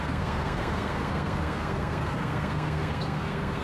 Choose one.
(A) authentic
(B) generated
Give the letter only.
B